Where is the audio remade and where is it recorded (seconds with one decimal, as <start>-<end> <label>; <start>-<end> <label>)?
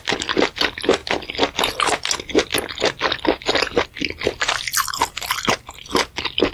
0.0-6.5 recorded